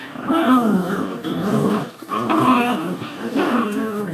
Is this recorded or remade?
remade